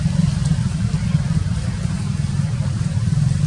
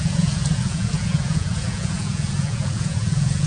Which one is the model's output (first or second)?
second